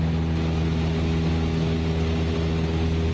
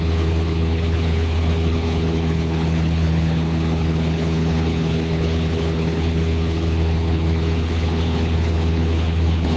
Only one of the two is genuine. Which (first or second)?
first